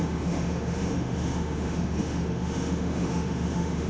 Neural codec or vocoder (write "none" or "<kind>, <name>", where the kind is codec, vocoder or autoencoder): autoencoder, DAC-VAE